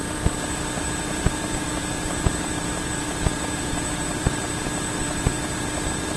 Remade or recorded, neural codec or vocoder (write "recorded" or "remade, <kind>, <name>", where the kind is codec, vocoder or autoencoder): remade, vocoder, BigVGAN v2